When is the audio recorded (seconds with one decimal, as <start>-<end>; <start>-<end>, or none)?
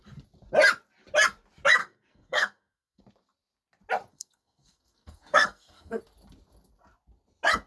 0.0-1.8; 3.0-4.1; 6.0-7.7